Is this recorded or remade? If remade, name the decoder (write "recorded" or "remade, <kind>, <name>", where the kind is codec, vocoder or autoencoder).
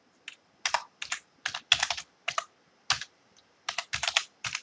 recorded